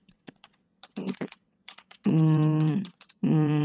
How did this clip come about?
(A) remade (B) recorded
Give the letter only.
A